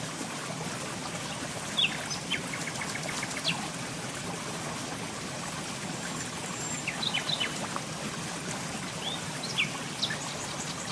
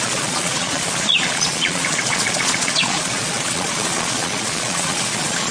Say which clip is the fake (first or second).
second